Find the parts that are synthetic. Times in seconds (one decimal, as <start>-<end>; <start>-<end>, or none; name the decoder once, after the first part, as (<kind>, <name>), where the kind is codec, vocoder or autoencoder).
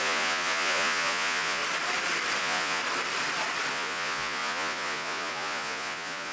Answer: 0.0-1.6 (vocoder, Vocos); 2.4-2.8; 3.7-6.3